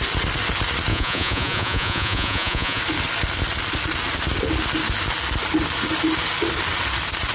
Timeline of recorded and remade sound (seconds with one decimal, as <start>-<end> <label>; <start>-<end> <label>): 0.0-0.9 recorded; 0.9-2.8 remade; 2.8-7.3 recorded